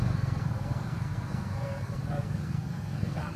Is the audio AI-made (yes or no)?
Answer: yes